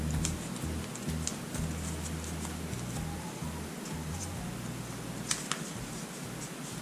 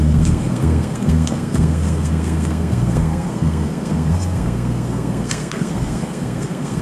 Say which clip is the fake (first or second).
second